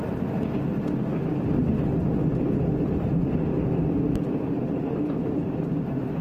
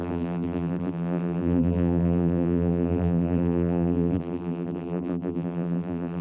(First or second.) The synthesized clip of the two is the second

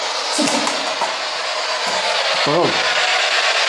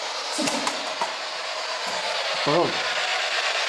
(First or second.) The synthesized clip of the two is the second